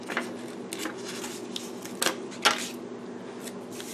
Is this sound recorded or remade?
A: recorded